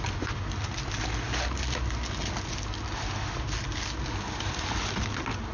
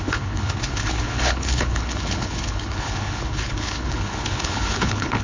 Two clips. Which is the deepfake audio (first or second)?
second